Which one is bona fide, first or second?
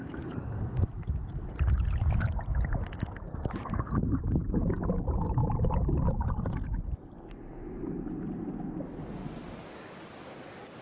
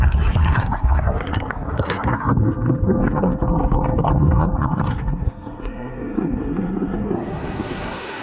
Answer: first